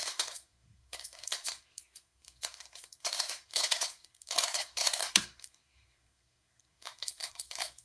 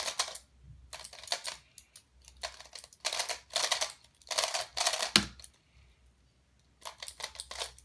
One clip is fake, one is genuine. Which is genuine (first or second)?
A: second